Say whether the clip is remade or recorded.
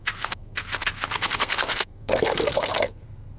remade